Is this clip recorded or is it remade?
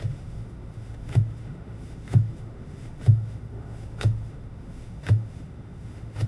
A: remade